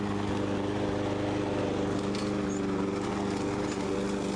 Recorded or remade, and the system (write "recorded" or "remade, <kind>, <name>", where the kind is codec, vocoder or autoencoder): recorded